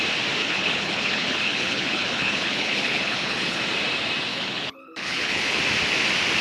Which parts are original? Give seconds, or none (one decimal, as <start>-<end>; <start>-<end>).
0.0-0.4; 3.6-4.3; 5.6-6.4